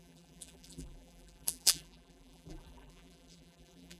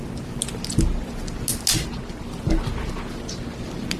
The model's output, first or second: first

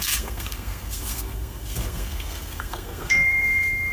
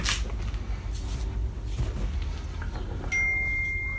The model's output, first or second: first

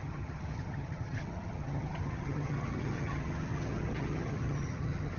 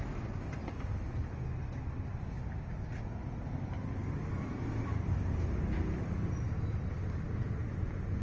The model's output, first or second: first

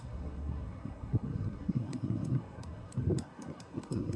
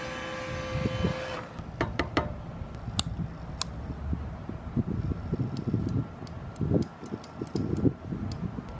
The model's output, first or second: first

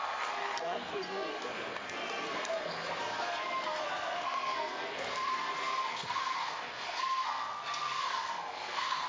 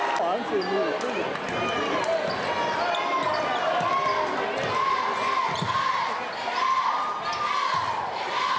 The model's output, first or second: first